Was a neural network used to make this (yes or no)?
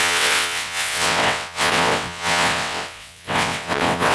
yes